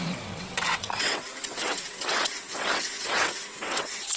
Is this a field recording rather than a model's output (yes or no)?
no